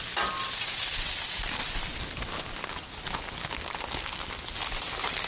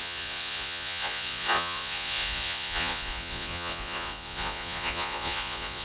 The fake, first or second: second